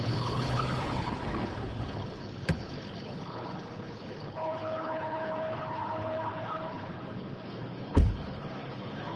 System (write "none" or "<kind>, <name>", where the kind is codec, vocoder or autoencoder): codec, HILCodec